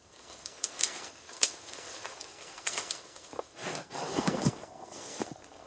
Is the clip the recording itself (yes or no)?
no